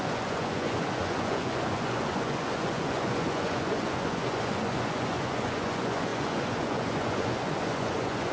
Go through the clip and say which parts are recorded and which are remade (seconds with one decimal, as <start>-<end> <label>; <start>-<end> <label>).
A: 0.0-8.3 remade

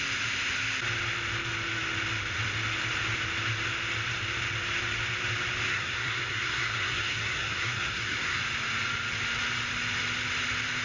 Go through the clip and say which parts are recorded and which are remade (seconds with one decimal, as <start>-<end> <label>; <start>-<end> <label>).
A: 0.0-5.7 recorded; 5.7-8.4 remade; 8.4-10.8 recorded

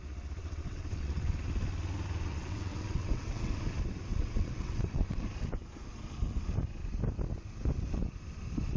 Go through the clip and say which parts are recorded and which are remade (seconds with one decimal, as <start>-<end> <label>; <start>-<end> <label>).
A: 0.0-0.4 recorded; 0.4-1.4 remade; 1.4-2.3 recorded; 2.3-3.6 remade; 3.6-4.1 recorded; 4.1-5.2 remade; 5.2-8.8 recorded